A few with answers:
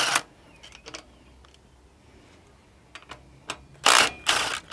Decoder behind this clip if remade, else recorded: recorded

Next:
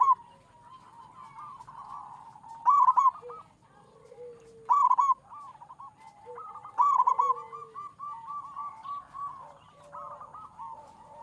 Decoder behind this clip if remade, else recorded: recorded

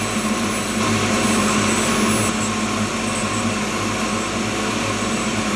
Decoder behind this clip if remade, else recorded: recorded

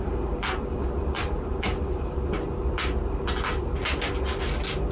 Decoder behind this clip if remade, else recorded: recorded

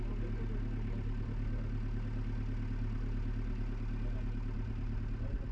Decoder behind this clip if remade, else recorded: recorded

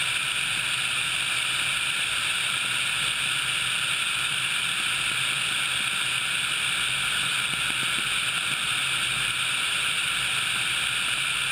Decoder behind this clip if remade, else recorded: recorded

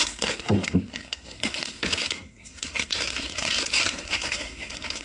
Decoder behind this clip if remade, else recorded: remade, codec, SNAC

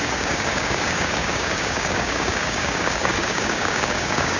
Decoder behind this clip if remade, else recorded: remade, codec, DAC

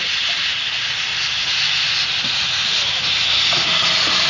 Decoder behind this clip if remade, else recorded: recorded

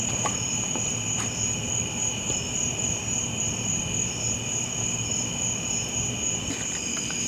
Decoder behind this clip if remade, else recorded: recorded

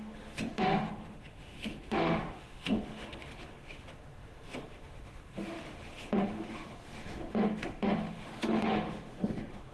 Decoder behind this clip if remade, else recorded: remade, autoencoder, DAC-VAE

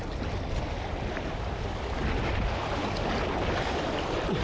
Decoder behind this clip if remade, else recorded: recorded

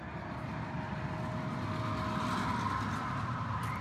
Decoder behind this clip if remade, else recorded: recorded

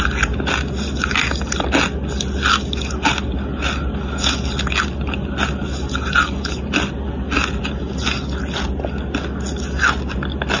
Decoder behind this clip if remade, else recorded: recorded